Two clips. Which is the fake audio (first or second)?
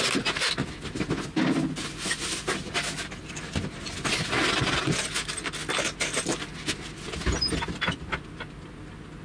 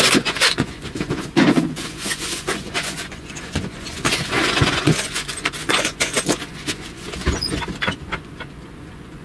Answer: second